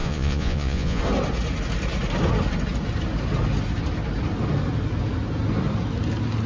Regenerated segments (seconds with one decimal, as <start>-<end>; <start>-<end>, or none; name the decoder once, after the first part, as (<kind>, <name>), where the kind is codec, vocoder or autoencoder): 0.0-1.0 (vocoder, Vocos)